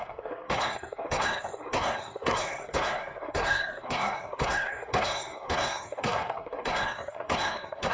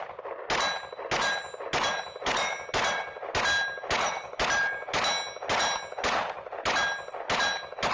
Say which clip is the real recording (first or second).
second